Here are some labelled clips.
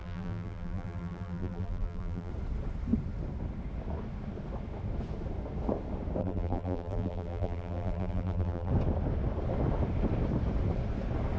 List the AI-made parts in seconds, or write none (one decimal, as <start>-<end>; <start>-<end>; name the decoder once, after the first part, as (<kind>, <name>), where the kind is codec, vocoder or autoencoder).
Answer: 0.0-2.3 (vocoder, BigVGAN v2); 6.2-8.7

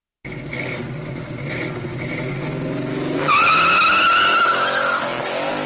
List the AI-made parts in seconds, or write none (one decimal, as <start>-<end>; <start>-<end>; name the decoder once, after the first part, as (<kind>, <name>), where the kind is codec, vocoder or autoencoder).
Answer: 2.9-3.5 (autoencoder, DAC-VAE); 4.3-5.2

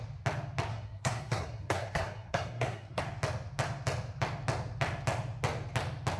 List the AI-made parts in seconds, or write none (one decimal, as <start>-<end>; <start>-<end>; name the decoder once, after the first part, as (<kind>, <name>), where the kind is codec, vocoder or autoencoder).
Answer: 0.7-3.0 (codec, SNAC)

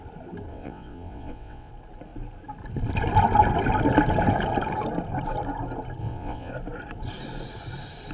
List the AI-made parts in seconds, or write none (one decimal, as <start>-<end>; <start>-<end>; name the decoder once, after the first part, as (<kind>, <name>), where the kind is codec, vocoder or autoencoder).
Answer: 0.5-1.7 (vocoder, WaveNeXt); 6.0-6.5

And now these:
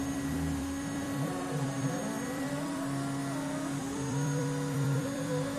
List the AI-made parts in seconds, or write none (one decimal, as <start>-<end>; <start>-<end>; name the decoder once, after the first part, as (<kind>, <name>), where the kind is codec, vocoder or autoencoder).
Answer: 0.0-3.2 (vocoder, BigVGAN v2); 3.8-5.6